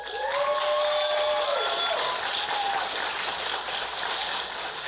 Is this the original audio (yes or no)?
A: yes